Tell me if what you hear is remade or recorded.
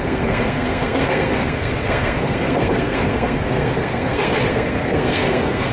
remade